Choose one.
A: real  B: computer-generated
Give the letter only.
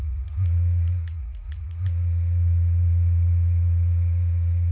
B